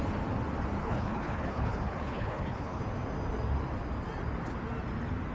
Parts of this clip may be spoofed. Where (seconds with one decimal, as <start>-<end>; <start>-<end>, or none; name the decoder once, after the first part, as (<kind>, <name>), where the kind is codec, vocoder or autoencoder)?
0.8-2.8 (codec, HILCodec)